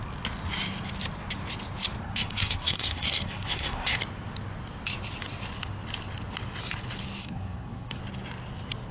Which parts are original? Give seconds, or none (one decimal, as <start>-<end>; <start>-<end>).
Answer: 0.0-2.0; 4.0-7.2; 8.0-8.9